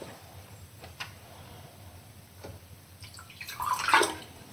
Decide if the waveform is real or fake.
fake